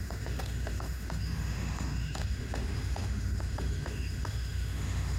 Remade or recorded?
remade